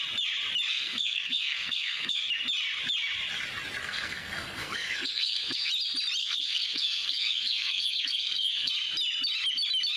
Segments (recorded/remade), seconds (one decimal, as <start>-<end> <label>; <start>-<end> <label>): 0.0-0.7 recorded; 0.7-2.2 remade; 2.2-3.8 recorded; 3.8-5.7 remade; 5.7-6.2 recorded; 6.2-8.7 remade; 8.7-10.0 recorded